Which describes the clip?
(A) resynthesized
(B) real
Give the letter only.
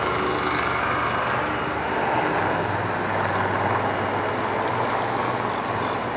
B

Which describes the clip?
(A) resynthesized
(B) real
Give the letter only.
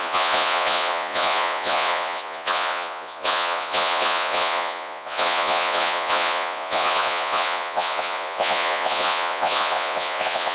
A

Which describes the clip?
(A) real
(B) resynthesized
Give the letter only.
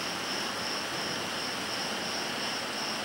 A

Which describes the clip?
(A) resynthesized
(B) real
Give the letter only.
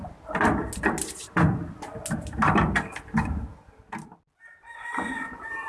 B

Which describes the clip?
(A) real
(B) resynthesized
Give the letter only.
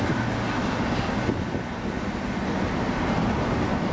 A